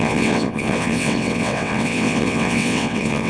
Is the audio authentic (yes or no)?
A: no